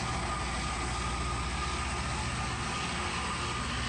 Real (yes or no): yes